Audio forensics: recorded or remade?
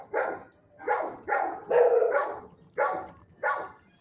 recorded